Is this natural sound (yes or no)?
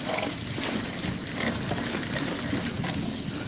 yes